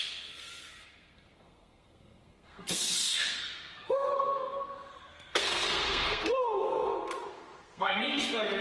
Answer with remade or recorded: remade